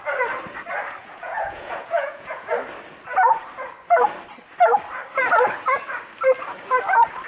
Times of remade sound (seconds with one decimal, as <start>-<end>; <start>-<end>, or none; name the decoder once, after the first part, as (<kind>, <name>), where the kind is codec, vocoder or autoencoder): 1.0-2.5 (vocoder, Vocos)